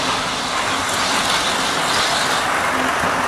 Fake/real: real